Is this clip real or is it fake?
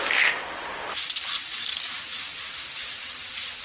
real